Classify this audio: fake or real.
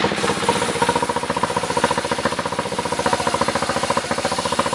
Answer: real